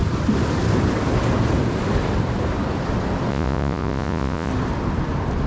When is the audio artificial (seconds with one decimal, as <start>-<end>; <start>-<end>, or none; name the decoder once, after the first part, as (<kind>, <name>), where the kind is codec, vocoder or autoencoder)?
3.3-4.5 (vocoder, Vocos)